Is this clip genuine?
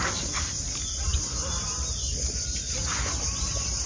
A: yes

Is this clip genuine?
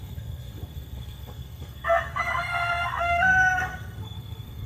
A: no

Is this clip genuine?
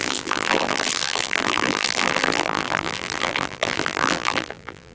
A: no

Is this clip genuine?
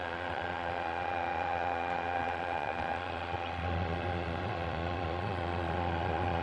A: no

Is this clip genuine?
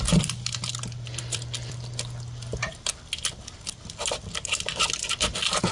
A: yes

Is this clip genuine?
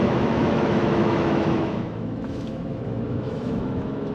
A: no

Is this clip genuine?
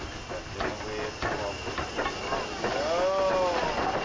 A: yes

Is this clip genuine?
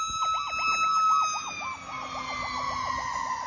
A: yes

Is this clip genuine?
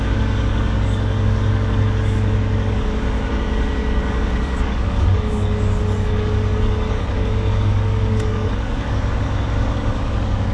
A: no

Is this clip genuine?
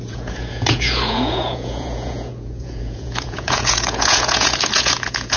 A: no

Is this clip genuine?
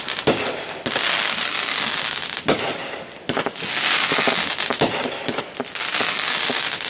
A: yes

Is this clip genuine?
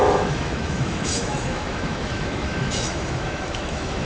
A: no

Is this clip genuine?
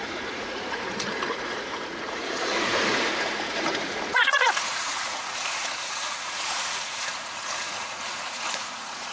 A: no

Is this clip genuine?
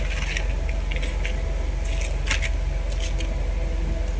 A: yes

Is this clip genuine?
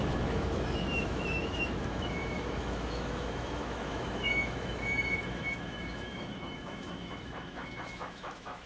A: no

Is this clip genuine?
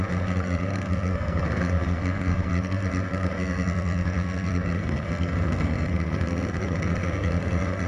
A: no